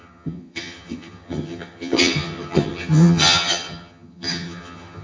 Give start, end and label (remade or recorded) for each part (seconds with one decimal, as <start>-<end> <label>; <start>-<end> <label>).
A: 0.0-5.0 remade